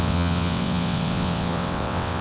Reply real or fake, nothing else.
fake